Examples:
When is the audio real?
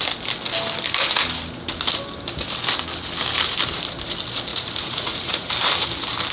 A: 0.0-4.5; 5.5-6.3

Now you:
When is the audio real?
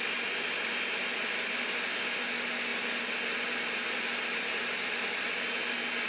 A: 0.0-6.1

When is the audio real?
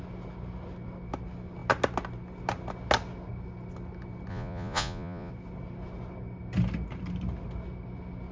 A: 0.0-4.3; 5.3-8.3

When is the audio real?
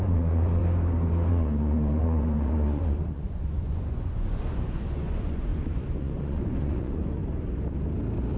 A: 0.6-1.3; 7.2-8.4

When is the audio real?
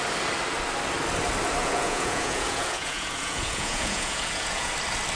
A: 0.0-1.6; 4.7-5.2